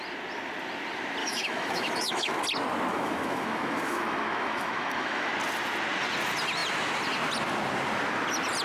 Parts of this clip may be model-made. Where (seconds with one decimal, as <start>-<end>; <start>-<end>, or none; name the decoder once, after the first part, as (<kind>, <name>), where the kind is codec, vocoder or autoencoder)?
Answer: 1.2-2.4 (autoencoder, DAC-VAE); 2.9-5.3